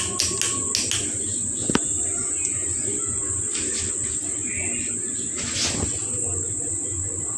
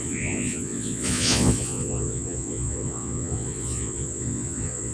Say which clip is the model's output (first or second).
second